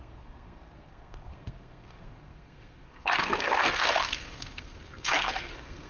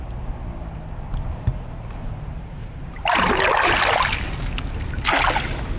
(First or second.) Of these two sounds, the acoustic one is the second